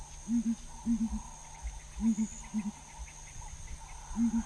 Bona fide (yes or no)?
yes